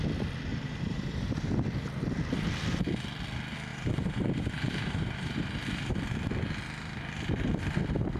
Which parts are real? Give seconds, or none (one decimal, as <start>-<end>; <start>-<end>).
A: 0.0-0.5; 1.5-3.7; 5.9-8.2